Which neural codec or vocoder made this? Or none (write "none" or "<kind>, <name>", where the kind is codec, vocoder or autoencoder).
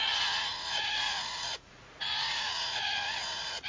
vocoder, Vocos